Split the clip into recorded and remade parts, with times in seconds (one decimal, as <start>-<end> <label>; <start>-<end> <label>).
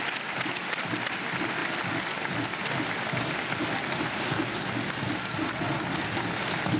0.0-6.8 recorded